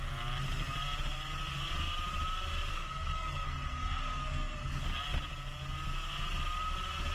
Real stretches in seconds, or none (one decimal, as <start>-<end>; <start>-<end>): 0.0-2.7; 4.8-7.1